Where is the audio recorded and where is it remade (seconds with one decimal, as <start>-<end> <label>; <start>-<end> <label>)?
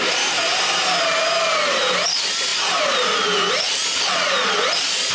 0.0-5.1 recorded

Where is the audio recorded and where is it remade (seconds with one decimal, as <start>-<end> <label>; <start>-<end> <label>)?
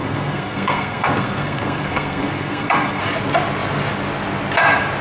0.0-3.0 remade; 3.0-5.0 recorded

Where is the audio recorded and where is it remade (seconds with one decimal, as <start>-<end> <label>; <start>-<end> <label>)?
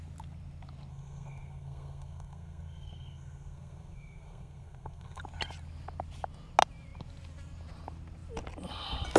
0.0-0.9 recorded; 0.9-5.2 remade; 5.2-9.2 recorded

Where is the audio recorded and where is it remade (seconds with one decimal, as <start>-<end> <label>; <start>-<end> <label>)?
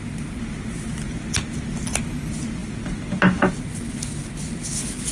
0.0-5.1 recorded